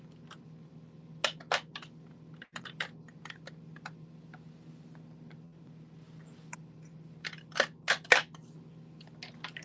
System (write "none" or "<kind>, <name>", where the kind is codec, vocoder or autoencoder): none